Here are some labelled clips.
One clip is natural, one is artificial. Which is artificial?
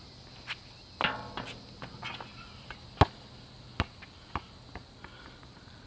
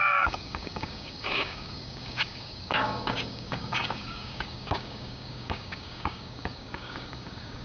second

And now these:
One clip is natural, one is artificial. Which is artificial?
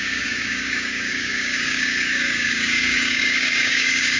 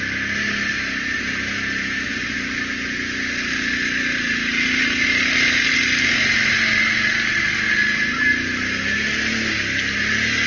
first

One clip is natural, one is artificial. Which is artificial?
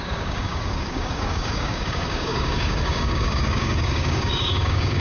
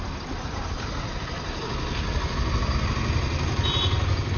first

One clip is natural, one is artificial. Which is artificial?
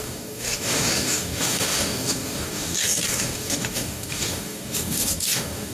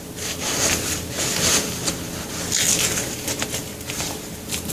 first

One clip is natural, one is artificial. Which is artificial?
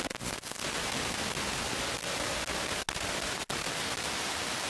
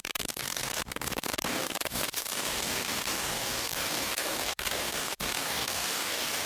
second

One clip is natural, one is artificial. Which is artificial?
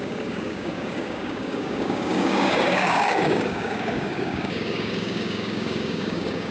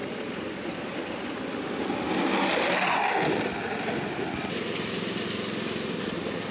first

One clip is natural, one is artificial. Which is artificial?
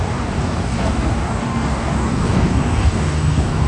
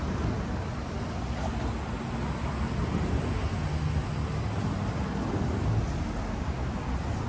first